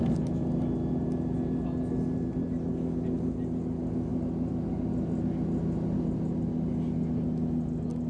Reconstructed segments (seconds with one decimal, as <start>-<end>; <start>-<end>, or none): none